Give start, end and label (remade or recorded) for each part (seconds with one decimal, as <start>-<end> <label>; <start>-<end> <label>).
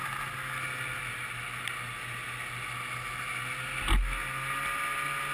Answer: 0.0-5.3 recorded